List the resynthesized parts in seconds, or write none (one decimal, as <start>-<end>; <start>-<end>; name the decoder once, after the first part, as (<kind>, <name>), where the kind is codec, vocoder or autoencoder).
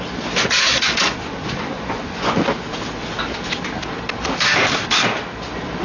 0.7-2.4 (vocoder, Vocos)